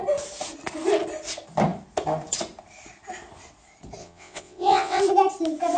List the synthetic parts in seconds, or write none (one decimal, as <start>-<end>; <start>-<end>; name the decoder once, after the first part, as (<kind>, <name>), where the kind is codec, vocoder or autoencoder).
4.0-5.0 (vocoder, WaveNeXt)